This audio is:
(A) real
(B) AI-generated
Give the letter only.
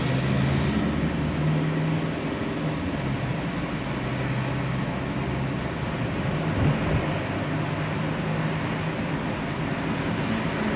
A